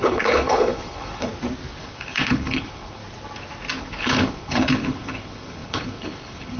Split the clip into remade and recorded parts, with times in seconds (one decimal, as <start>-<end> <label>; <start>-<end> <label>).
0.0-1.3 remade; 1.3-1.8 recorded; 1.8-3.0 remade; 3.0-3.8 recorded; 3.8-6.6 remade